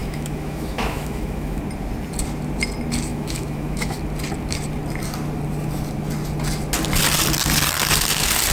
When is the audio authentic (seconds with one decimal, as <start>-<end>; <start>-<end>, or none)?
1.6-3.1; 4.0-8.5